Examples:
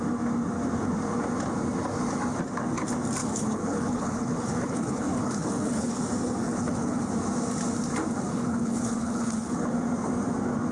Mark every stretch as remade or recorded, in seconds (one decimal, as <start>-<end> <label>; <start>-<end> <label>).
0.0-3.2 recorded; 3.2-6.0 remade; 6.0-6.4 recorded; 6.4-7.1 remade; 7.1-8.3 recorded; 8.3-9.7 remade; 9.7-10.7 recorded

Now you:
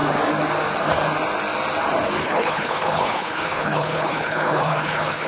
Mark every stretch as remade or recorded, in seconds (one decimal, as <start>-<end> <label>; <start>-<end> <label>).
0.0-2.2 recorded; 2.2-5.3 remade

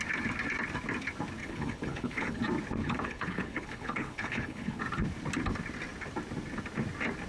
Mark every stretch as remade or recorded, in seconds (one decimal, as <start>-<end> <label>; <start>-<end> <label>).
0.0-1.4 recorded; 1.4-2.4 remade; 2.4-2.8 recorded; 2.8-4.8 remade; 4.8-7.3 recorded

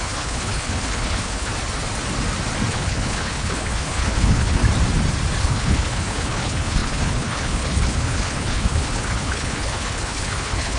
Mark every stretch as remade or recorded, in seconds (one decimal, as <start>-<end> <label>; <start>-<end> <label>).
0.0-1.5 remade; 1.5-2.7 recorded; 2.7-4.6 remade; 4.6-5.4 recorded; 5.4-10.8 remade

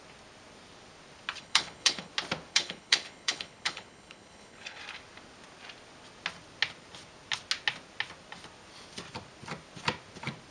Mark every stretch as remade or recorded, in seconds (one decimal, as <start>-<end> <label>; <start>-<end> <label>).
0.0-1.4 recorded; 1.4-2.1 remade; 2.1-2.5 recorded; 2.5-4.8 remade; 4.8-10.5 recorded